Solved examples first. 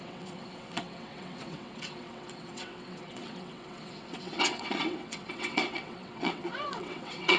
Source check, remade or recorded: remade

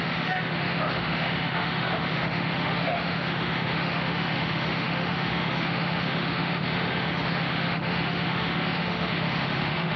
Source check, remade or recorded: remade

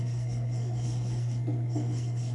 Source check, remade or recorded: remade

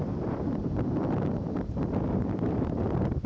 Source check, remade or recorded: recorded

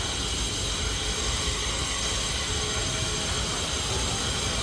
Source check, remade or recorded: recorded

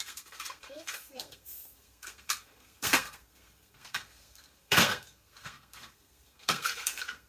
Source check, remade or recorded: remade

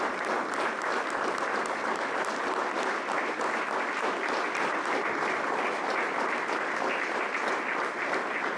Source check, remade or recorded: recorded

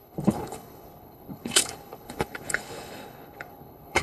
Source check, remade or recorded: remade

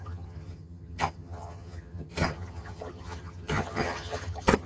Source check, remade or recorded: remade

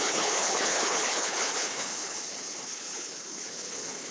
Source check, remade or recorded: remade